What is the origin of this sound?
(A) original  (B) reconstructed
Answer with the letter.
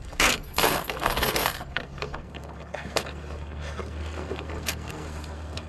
B